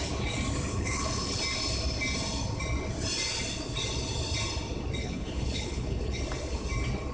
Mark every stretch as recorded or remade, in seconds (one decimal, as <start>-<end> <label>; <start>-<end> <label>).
0.0-0.7 recorded; 0.7-1.4 remade; 1.4-5.0 recorded; 5.0-6.2 remade; 6.2-7.1 recorded